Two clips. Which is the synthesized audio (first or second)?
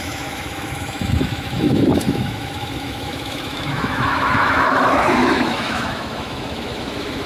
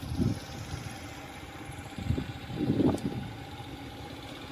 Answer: first